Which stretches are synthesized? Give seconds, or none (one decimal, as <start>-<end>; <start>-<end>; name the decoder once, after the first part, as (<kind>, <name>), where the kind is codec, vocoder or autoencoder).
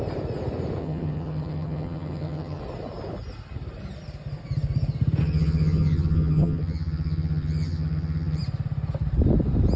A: 0.8-2.6 (vocoder, HiFi-GAN); 5.2-8.4